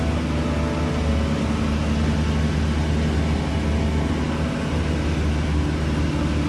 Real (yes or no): yes